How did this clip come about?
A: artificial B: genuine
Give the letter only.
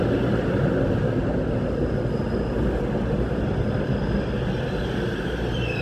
B